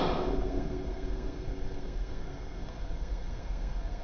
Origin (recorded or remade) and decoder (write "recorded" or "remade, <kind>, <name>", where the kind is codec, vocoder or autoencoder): remade, codec, SNAC